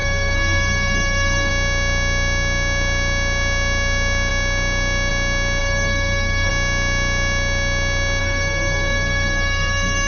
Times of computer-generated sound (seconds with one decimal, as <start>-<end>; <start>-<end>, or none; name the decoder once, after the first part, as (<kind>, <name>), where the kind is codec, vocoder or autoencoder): 0.0-1.5 (codec, SNAC); 5.6-6.5; 8.2-10.1